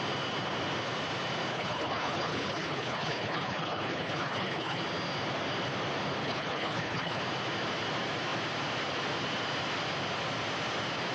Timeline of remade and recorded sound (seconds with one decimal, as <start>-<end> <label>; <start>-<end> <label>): 0.0-1.5 recorded; 1.5-4.8 remade; 4.8-6.2 recorded; 6.2-7.2 remade; 7.2-11.1 recorded